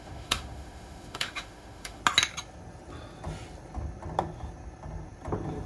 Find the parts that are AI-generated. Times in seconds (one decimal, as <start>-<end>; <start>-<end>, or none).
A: 0.0-2.0